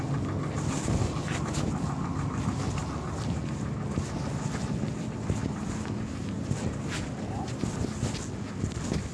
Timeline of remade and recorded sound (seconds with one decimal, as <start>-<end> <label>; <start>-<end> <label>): 0.0-9.1 recorded